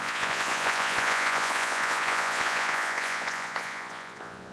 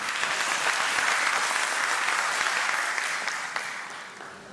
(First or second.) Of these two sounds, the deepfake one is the first